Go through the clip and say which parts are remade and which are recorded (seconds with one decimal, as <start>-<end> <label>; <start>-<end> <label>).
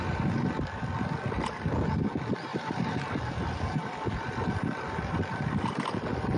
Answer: 0.0-2.5 recorded; 2.5-4.9 remade; 4.9-6.4 recorded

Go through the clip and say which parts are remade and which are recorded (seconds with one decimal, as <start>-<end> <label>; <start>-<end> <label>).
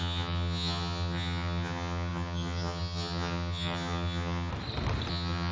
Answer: 0.0-4.5 remade; 4.5-5.1 recorded; 5.1-5.5 remade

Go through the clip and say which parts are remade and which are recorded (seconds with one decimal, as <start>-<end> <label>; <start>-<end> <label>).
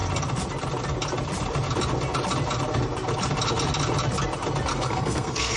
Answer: 0.0-4.7 recorded; 4.7-5.6 remade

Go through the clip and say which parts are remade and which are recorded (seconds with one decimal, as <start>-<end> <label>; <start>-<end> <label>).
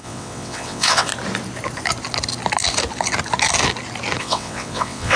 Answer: 0.0-1.1 remade; 1.1-4.2 recorded; 4.2-5.2 remade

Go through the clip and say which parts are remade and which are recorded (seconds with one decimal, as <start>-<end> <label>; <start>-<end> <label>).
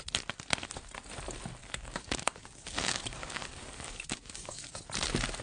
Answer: 0.0-1.6 recorded; 1.6-4.8 remade; 4.8-5.4 recorded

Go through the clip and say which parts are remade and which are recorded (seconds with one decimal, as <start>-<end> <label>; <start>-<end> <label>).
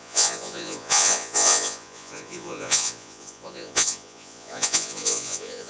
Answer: 0.0-5.7 remade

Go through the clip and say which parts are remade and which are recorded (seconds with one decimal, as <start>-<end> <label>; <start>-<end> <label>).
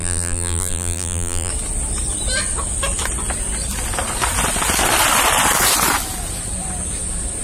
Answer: 0.0-1.5 remade; 1.5-7.4 recorded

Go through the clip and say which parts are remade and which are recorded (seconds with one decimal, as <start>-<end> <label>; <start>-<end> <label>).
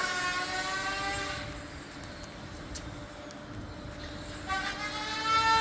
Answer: 0.0-5.6 recorded